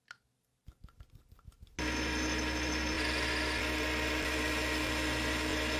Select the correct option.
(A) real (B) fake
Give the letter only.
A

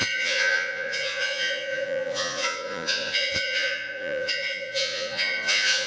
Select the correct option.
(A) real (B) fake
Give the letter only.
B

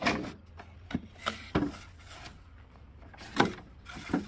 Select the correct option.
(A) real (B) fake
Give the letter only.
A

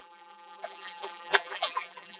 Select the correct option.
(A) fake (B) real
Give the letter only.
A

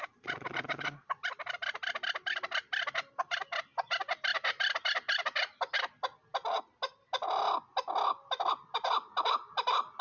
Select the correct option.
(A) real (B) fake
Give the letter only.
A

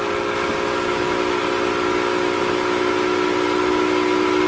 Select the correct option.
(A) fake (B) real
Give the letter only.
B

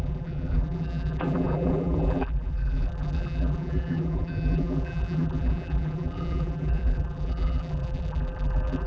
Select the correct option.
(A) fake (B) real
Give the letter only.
A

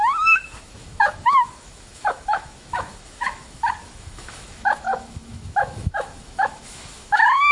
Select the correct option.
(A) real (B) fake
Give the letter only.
B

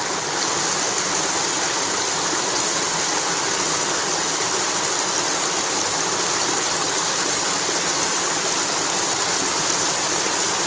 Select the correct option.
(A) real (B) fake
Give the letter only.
A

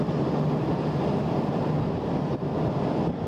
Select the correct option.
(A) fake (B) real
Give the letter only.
B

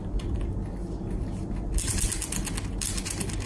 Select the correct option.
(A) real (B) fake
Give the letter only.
A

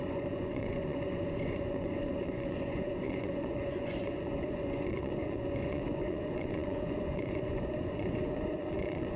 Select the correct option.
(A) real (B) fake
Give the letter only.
B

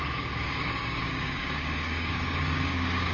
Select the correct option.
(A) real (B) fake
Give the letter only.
B